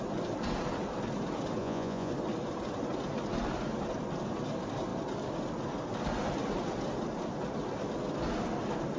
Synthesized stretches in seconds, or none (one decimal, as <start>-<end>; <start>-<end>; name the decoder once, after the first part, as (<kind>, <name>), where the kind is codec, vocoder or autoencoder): 1.6-2.1 (vocoder, Vocos)

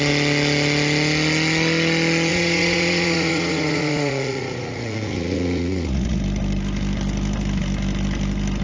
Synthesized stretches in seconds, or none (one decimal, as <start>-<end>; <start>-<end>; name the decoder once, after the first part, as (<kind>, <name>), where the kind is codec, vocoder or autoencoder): 2.3-6.2 (vocoder, Vocos)

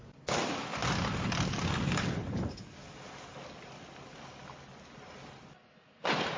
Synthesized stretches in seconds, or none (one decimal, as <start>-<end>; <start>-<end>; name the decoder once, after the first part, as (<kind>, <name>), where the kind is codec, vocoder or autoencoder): none

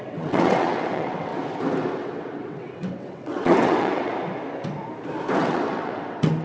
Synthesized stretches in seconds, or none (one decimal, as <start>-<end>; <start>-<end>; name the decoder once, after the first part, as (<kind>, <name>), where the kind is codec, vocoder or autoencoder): 0.0-1.3 (vocoder, WaveNeXt); 1.9-4.1; 5.4-6.4

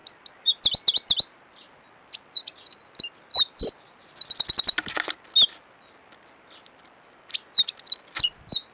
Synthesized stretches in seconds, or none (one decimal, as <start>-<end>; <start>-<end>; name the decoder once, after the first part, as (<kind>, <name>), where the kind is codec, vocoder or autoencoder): 0.0-0.5 (vocoder, BigVGAN v2)

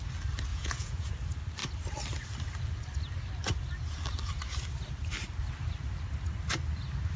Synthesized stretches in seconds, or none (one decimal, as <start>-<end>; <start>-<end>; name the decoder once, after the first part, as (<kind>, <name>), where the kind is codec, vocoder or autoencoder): 0.5-1.1 (vocoder, Vocos)

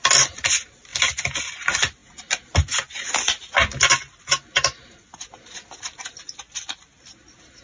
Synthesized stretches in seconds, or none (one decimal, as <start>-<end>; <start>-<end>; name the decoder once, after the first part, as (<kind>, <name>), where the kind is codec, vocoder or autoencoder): none

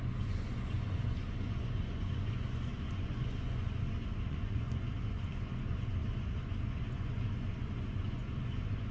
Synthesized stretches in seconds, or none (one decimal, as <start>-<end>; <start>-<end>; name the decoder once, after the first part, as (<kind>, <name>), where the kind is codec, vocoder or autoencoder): 0.0-8.9 (vocoder, Vocos)